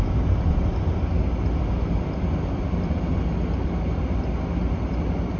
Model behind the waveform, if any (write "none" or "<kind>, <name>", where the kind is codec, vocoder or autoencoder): none